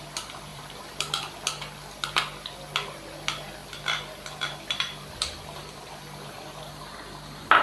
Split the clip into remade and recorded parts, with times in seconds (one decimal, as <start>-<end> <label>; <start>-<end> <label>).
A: 0.0-0.5 recorded; 0.5-1.3 remade; 1.3-3.6 recorded; 3.6-5.9 remade; 5.9-7.6 recorded